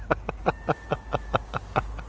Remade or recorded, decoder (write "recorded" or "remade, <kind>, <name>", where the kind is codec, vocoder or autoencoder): recorded